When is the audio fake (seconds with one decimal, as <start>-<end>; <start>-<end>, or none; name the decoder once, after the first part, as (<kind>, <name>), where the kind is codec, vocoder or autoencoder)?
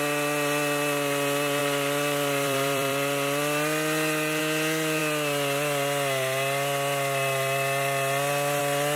1.6-4.4 (vocoder, BigVGAN v2)